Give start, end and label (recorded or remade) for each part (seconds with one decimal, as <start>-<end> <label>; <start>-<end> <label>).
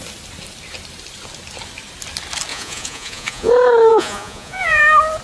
0.0-2.5 recorded; 2.5-3.5 remade; 3.5-3.9 recorded; 3.9-4.8 remade; 4.8-5.2 recorded